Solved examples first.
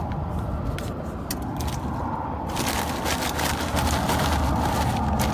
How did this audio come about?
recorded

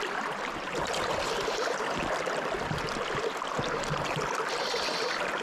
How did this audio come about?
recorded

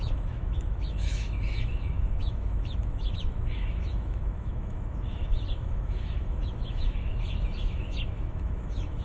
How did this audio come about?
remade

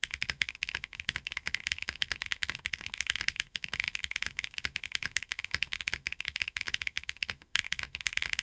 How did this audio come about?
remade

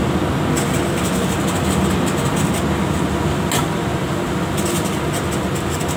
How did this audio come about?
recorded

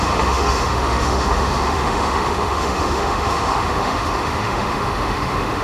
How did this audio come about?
remade